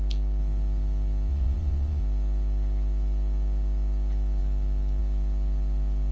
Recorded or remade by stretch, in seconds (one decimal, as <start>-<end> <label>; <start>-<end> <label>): 0.0-1.3 recorded; 1.3-2.0 remade; 2.0-6.1 recorded